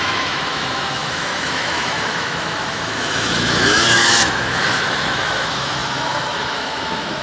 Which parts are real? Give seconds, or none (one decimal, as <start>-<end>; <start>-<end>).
none

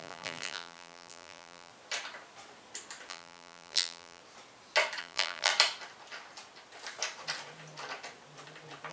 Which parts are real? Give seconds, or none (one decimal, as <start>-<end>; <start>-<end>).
1.7-3.1; 4.2-5.0; 5.5-8.9

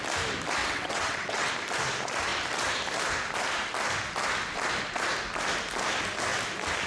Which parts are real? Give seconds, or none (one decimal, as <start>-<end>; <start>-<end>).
0.0-0.6; 1.5-6.9